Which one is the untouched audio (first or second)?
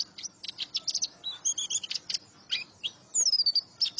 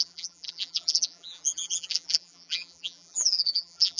first